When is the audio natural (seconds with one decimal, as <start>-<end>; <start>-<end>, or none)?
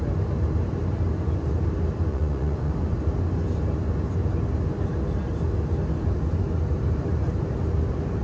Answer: 0.0-2.1; 2.7-8.2